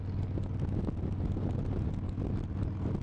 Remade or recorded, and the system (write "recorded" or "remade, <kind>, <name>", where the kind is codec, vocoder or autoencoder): recorded